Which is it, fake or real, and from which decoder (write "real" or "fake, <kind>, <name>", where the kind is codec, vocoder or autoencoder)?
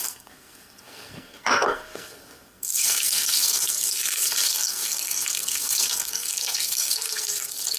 fake, codec, SNAC